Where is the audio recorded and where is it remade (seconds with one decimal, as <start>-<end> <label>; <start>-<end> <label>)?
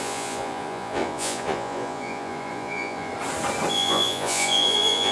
0.0-3.1 remade; 3.1-3.7 recorded; 3.7-5.1 remade